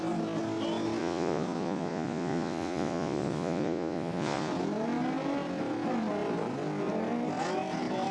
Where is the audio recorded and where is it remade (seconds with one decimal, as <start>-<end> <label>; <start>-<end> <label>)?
0.0-1.0 recorded; 1.0-4.5 remade; 4.5-8.1 recorded